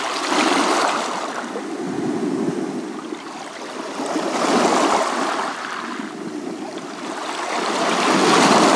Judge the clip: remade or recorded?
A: recorded